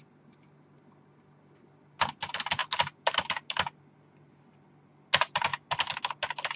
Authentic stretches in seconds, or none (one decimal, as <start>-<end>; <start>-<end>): 0.0-6.6